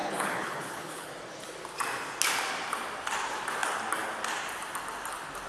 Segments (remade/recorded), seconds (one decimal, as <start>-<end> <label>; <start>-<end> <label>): 0.0-1.1 remade; 1.1-5.5 recorded